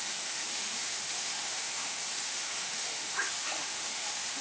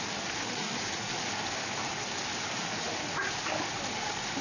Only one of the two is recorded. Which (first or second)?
second